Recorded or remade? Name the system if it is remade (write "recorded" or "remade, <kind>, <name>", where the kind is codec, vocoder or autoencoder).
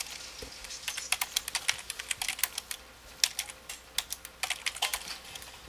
recorded